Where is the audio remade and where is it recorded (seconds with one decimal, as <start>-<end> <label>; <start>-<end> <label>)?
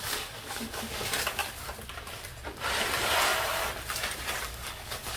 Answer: 0.0-1.4 remade; 1.4-4.5 recorded; 4.5-5.2 remade